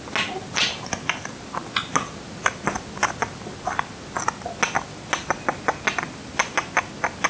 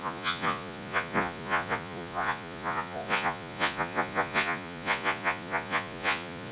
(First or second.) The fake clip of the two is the second